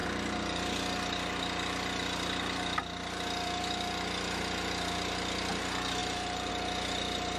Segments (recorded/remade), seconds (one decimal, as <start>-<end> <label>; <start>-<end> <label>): 0.0-6.0 recorded; 6.0-6.5 remade; 6.5-7.4 recorded